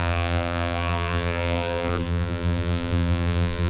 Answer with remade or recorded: remade